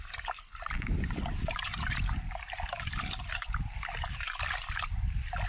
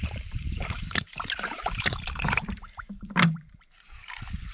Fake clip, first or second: second